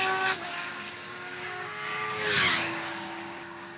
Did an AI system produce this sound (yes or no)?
yes